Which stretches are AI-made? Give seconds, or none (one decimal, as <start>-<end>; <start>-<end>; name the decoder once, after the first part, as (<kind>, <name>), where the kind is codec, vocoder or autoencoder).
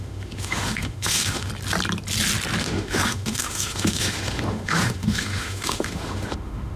0.0-1.5 (autoencoder, DAC-VAE); 2.6-6.8